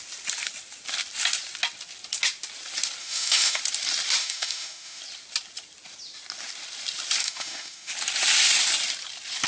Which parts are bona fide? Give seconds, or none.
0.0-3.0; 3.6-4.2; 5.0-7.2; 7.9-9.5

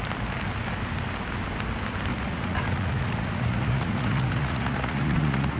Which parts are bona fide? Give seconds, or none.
0.0-2.1